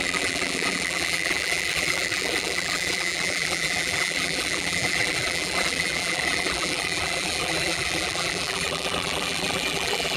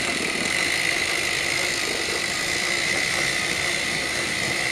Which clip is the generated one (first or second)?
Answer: first